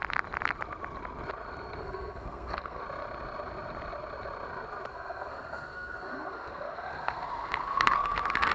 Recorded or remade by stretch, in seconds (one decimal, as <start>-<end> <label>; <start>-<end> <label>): 0.0-1.8 recorded; 1.8-2.8 remade; 2.8-4.9 recorded; 4.9-8.5 remade

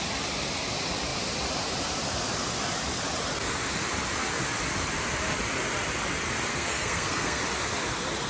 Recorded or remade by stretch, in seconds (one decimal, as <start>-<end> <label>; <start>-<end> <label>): 0.0-6.5 recorded; 6.5-7.4 remade; 7.4-8.3 recorded

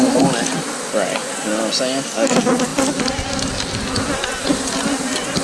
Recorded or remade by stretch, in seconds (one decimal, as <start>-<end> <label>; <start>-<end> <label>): 0.0-5.4 recorded